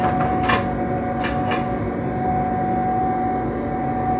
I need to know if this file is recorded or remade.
recorded